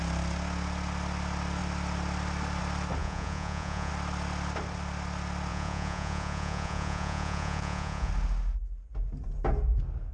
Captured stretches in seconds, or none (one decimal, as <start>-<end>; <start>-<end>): 0.0-3.0; 3.9-5.5; 8.1-10.1